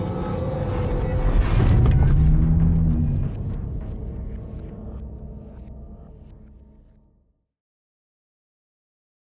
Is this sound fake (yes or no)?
no